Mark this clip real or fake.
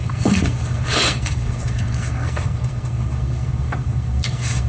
fake